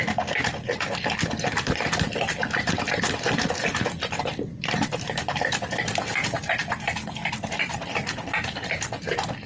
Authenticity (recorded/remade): recorded